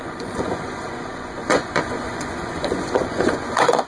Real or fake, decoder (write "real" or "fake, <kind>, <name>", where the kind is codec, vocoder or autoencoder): fake, vocoder, Vocos